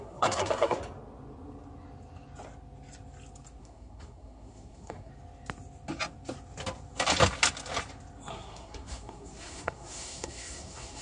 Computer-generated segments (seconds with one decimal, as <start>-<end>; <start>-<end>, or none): 0.0-0.8; 3.6-5.1; 8.3-11.0